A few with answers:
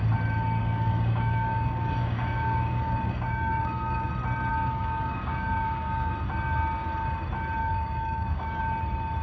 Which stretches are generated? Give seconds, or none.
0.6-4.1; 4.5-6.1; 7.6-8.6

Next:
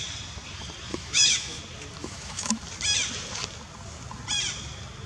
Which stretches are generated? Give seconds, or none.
0.9-1.6; 2.0-2.6